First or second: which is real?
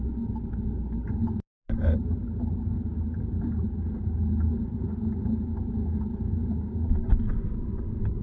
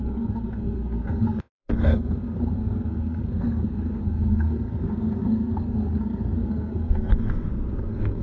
first